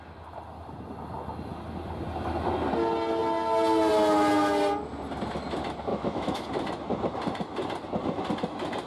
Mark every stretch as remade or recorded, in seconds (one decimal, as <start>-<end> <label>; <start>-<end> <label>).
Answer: 0.0-5.9 recorded; 5.9-6.4 remade; 6.4-8.9 recorded